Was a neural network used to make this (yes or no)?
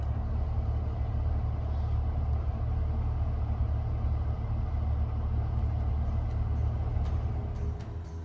no